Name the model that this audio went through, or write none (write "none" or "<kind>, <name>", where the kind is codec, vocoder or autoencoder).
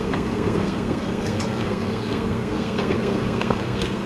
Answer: codec, SNAC